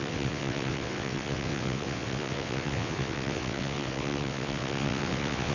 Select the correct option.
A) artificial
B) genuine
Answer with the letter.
A